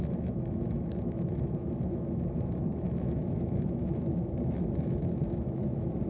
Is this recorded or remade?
remade